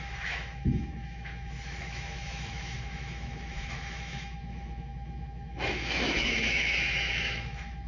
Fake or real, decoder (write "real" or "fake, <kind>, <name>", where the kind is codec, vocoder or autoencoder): fake, autoencoder, DAC-VAE